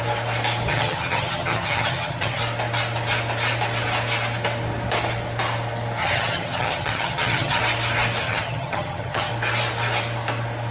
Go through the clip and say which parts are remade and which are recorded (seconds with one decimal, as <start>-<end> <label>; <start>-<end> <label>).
0.0-0.7 recorded; 0.7-2.4 remade; 2.4-6.0 recorded; 6.0-7.6 remade; 7.6-8.2 recorded; 8.2-9.3 remade; 9.3-10.7 recorded